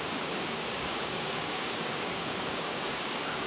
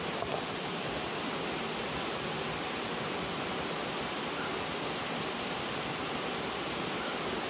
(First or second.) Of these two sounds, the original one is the second